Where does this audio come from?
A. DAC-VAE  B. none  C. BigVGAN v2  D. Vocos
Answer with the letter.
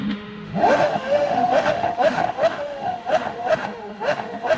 A